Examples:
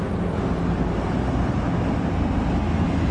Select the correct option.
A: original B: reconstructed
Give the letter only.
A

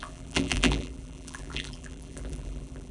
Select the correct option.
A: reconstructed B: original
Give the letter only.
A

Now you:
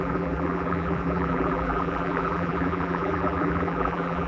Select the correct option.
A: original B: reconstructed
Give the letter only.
B